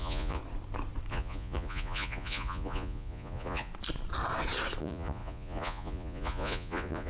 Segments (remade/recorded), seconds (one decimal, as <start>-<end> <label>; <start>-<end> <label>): 0.0-0.4 remade; 0.4-1.1 recorded; 1.1-3.7 remade; 3.7-4.8 recorded; 4.8-7.1 remade